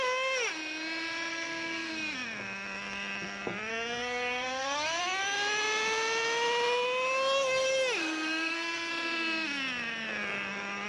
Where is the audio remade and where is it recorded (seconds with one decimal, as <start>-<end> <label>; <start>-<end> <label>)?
0.0-1.3 recorded; 1.3-1.9 remade; 1.9-3.7 recorded; 3.7-5.0 remade; 5.0-8.0 recorded; 8.0-8.9 remade; 8.9-10.9 recorded